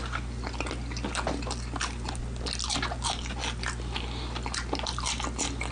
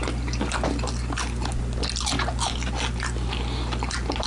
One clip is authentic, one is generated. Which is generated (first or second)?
second